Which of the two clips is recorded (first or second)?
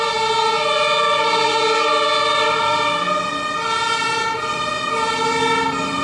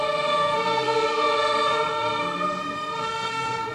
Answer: first